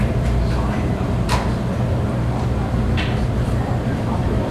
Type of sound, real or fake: fake